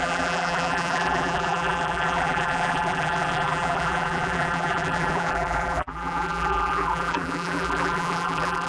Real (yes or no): no